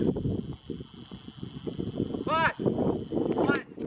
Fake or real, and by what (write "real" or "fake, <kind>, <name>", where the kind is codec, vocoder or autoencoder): real